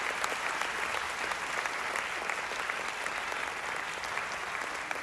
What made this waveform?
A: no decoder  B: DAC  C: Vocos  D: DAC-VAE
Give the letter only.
A